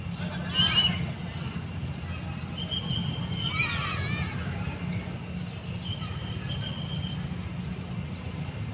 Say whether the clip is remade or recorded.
recorded